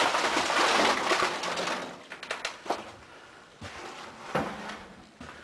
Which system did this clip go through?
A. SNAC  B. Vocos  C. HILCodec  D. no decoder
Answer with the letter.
D